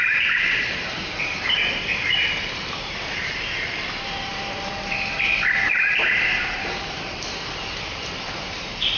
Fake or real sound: fake